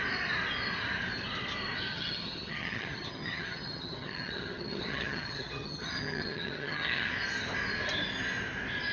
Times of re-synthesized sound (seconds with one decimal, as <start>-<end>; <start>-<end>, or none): 1.9-7.1